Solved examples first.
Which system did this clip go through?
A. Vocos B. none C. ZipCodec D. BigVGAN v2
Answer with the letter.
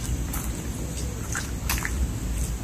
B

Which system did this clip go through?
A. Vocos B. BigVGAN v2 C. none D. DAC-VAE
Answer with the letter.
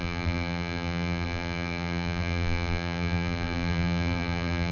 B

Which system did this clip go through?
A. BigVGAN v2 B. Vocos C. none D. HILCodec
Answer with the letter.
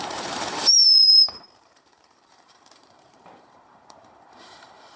A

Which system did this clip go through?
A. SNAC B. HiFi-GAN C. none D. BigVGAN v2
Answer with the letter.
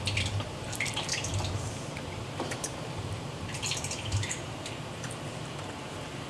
D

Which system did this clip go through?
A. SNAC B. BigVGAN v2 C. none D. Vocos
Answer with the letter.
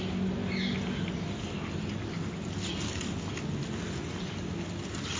C